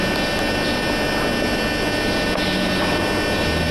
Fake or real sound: real